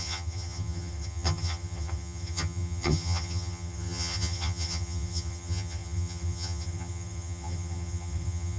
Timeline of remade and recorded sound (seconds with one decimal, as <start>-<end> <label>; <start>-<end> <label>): 0.0-8.6 remade